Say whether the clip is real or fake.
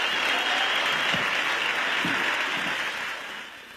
real